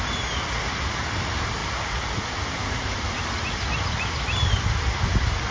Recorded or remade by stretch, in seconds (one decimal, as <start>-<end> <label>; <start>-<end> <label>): 0.0-5.5 recorded